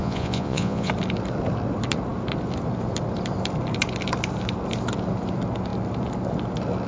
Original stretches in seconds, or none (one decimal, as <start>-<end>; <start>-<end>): 0.9-6.9